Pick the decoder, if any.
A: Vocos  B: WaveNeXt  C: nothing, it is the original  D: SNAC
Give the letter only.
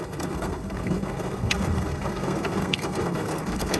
D